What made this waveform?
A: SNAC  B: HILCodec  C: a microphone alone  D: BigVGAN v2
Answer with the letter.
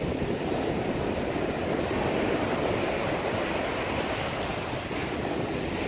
C